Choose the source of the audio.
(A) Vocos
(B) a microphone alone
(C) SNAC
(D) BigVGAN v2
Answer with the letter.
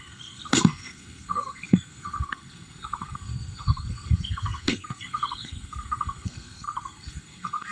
C